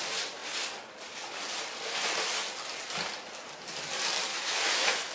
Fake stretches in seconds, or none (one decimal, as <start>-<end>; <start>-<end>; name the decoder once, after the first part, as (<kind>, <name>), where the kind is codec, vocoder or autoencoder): 4.3-5.1 (autoencoder, DAC-VAE)